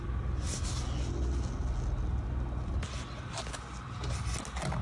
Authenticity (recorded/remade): recorded